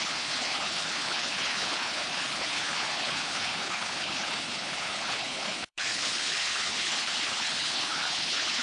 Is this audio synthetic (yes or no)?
yes